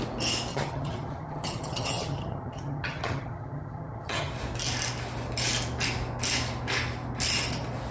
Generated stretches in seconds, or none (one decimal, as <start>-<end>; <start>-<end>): 0.5-4.3